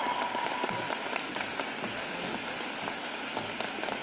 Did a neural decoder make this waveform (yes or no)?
no